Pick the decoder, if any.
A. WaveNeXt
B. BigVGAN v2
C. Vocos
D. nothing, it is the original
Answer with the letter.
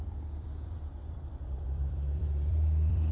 B